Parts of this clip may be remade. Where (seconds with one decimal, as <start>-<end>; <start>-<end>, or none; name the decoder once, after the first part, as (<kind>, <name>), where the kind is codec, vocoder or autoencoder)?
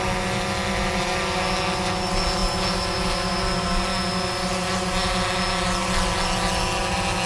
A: none